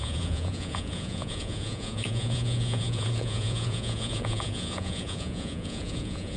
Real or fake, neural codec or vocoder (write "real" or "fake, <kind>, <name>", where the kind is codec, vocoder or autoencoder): fake, vocoder, Vocos